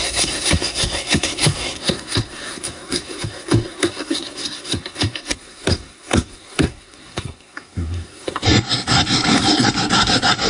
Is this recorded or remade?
remade